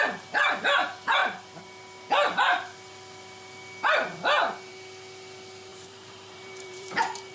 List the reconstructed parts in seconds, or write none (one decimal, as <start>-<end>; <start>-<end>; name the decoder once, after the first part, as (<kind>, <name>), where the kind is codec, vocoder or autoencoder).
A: 5.7-7.3 (vocoder, BigVGAN v2)